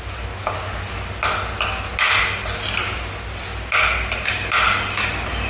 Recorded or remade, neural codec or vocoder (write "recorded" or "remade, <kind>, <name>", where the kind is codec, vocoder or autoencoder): recorded